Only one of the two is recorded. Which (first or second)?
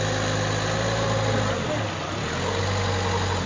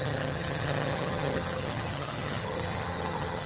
first